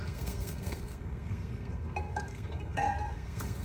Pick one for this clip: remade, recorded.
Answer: remade